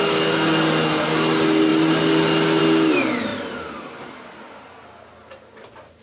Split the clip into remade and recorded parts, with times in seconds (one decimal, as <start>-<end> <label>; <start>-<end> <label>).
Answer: 0.0-6.0 recorded